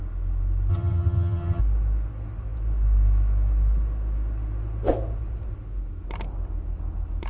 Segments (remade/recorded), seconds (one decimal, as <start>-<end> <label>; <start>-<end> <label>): 0.0-0.7 recorded; 0.7-1.6 remade; 1.6-7.3 recorded